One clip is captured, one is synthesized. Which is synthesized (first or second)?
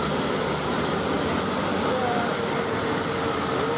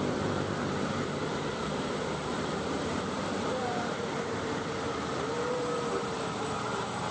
second